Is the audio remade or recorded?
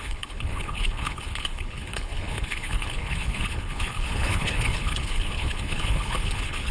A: remade